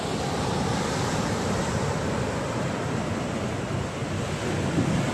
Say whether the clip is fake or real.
real